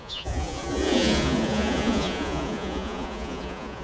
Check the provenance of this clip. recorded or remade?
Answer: remade